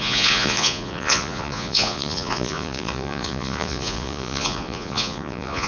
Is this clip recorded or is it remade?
remade